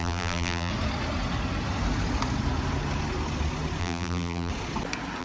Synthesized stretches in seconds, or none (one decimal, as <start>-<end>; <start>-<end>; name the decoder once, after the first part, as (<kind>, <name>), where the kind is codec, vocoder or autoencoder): 0.0-0.7 (vocoder, BigVGAN v2); 3.8-4.5